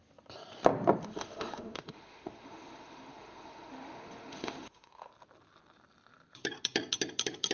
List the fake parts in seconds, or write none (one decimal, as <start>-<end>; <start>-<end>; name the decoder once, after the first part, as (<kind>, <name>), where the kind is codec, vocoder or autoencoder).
1.0-5.1 (autoencoder, DAC-VAE)